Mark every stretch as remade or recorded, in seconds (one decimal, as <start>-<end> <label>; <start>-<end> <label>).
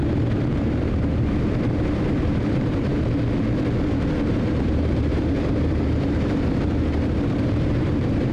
0.0-2.9 remade; 2.9-4.3 recorded; 4.3-8.3 remade